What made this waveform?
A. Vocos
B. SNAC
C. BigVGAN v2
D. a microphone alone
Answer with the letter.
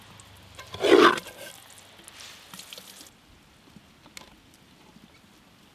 D